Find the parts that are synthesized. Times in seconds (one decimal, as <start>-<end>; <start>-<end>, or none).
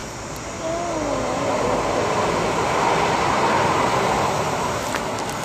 none